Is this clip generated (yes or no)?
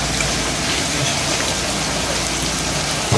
no